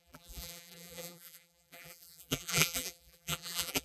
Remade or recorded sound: remade